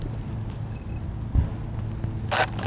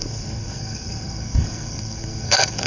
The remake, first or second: second